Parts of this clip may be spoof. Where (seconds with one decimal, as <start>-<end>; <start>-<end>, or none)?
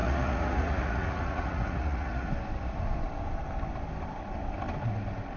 0.0-2.3